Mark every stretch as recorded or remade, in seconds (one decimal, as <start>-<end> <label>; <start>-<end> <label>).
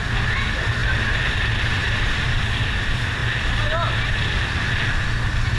0.0-1.8 recorded; 1.8-2.4 remade; 2.4-5.6 recorded